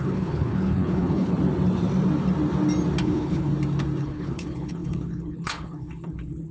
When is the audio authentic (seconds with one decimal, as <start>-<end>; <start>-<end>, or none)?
1.3-3.0; 3.5-4.0